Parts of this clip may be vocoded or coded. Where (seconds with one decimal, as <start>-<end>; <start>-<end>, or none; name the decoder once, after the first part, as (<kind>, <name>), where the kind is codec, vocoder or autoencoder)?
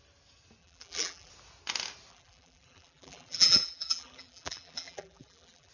0.6-1.3 (vocoder, BigVGAN v2); 2.1-5.7